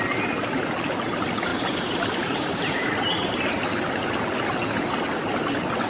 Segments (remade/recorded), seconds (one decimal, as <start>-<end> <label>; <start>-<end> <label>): 0.0-1.5 recorded; 1.5-2.9 remade; 2.9-5.9 recorded